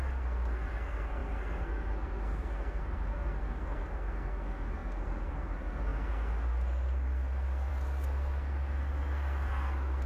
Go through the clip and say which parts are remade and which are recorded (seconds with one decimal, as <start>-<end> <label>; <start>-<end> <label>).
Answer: 0.0-10.1 remade